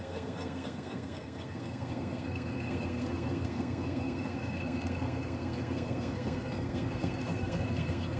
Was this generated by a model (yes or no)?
yes